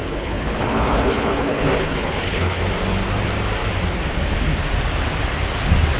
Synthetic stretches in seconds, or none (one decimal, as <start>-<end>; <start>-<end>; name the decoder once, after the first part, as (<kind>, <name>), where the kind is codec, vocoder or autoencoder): 0.0-2.6 (codec, HILCodec)